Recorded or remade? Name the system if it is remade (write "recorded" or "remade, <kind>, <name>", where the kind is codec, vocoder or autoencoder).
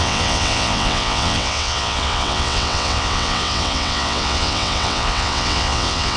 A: remade, vocoder, WaveNeXt